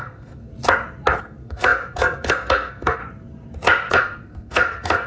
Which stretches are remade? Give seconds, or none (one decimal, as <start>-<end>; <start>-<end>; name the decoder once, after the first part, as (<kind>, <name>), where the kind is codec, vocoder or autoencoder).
0.0-0.5 (codec, SNAC); 1.2-3.0; 3.9-5.1